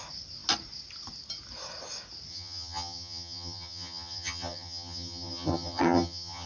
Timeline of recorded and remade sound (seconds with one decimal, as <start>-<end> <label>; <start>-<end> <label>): 0.0-2.3 recorded; 2.3-6.5 remade